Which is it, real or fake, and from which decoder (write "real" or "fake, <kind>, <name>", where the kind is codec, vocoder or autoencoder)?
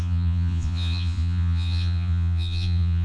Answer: fake, vocoder, Vocos